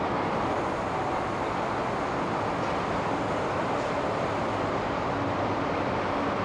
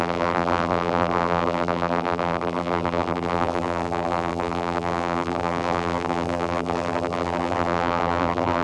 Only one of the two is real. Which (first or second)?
first